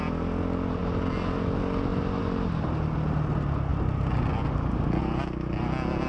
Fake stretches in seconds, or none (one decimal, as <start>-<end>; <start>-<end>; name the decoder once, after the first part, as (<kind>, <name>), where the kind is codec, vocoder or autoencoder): none